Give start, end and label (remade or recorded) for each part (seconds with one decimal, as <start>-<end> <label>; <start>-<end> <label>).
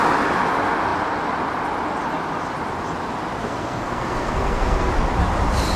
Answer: 0.0-3.4 recorded; 3.4-4.9 remade; 4.9-5.8 recorded